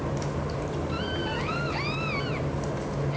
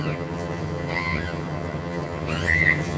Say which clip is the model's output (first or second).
second